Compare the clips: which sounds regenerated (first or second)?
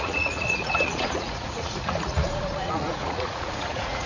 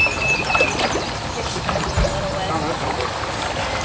first